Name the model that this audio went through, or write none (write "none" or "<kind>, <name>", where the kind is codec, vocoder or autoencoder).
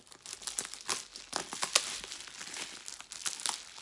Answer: none